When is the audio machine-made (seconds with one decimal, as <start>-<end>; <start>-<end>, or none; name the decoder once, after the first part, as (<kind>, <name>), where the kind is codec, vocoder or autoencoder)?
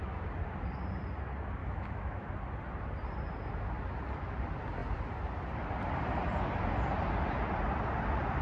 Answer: 1.6-2.3 (autoencoder, DAC-VAE)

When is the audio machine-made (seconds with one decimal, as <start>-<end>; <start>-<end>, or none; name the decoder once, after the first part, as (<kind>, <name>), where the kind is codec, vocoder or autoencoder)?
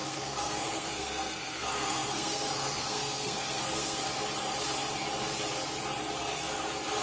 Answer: 0.0-4.0 (codec, SNAC)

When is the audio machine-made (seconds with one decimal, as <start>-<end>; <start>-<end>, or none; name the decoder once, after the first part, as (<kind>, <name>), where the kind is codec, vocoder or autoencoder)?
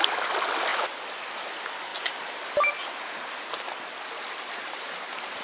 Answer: none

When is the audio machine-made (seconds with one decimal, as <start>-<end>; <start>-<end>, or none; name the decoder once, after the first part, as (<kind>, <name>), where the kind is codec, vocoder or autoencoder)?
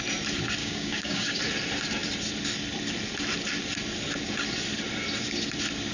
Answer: 0.6-1.4 (codec, DAC)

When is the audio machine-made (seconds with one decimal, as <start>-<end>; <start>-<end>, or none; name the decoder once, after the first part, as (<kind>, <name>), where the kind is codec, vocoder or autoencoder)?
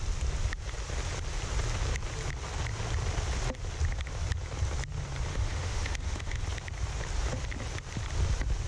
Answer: 5.3-6.4 (autoencoder, DAC-VAE)